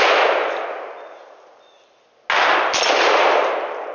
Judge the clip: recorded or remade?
recorded